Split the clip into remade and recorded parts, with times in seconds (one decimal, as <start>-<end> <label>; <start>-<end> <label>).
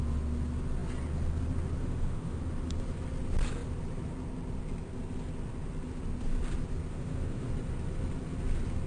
0.0-1.8 recorded; 1.8-2.4 remade; 2.4-6.9 recorded; 6.9-7.5 remade; 7.5-8.9 recorded